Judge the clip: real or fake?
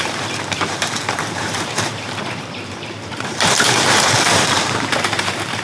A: fake